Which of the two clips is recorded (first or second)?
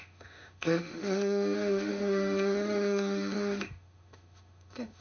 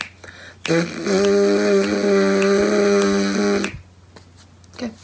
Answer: second